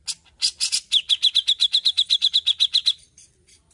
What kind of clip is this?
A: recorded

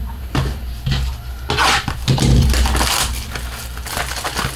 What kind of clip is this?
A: recorded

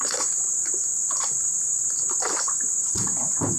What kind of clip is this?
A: remade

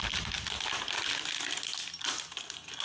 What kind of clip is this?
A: recorded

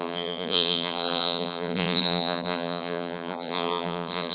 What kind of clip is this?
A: remade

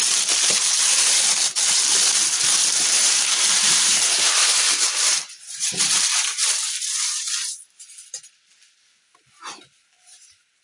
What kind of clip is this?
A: remade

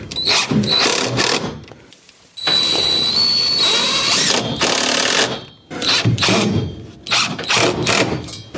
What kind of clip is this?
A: recorded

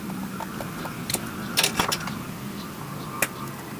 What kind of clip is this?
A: recorded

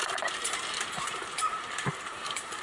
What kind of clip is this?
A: remade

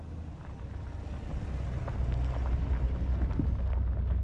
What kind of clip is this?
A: recorded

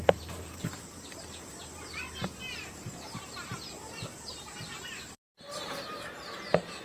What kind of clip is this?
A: remade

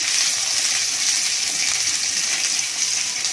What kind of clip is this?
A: recorded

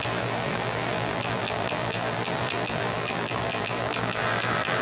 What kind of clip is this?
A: remade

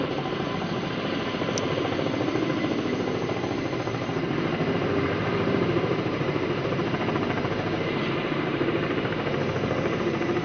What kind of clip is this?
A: remade